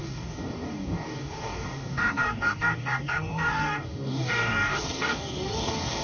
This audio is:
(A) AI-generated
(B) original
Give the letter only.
A